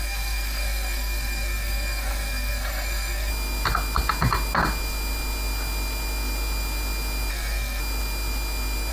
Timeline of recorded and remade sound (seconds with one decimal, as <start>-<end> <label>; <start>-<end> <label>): 0.0-3.3 remade; 3.3-7.3 recorded; 7.3-7.8 remade; 7.8-8.9 recorded